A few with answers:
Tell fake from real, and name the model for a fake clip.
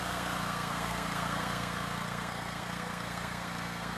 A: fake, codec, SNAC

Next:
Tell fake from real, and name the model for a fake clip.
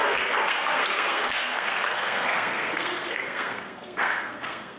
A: fake, codec, SNAC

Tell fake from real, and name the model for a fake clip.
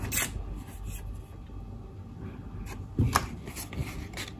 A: real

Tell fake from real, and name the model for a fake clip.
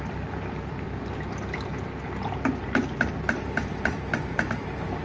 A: real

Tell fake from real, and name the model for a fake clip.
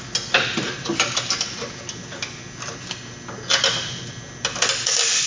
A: real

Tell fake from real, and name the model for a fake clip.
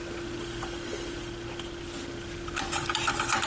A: real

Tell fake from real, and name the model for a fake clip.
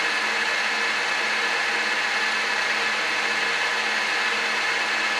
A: real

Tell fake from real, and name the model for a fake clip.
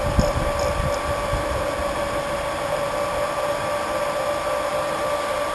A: real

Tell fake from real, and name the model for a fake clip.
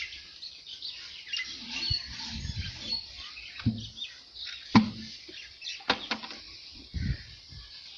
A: real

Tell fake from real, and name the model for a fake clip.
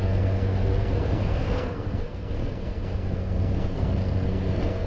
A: fake, codec, SNAC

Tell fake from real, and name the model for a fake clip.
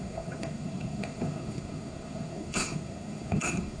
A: fake, codec, SNAC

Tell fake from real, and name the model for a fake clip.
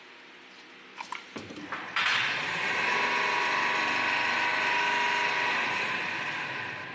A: real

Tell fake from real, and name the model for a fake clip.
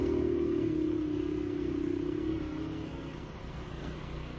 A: fake, codec, SNAC